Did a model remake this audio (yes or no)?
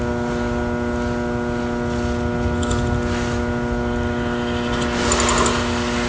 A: no